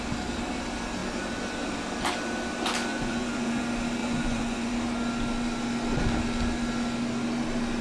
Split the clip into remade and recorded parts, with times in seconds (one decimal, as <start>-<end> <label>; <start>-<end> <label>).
0.0-2.9 recorded; 2.9-3.6 remade; 3.6-4.0 recorded; 4.0-4.7 remade; 4.7-7.8 recorded